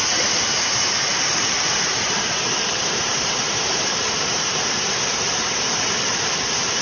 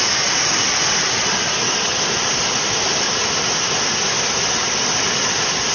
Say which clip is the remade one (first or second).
first